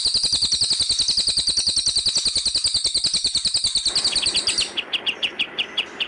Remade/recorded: recorded